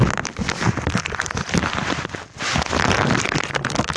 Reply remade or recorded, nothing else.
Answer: recorded